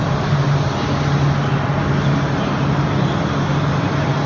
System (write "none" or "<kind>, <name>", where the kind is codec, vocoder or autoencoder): none